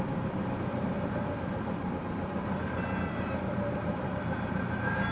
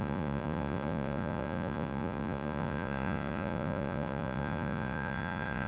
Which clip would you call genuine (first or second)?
first